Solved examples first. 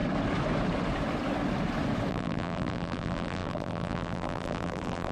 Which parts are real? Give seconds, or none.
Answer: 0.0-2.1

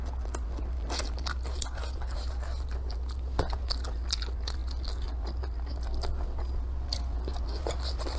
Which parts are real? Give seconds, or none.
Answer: 0.0-8.2